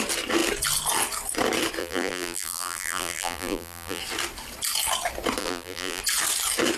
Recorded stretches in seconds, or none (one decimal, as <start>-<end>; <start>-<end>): 0.0-1.8; 4.0-5.4; 6.0-6.8